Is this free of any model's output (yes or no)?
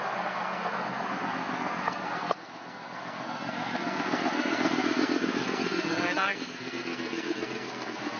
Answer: no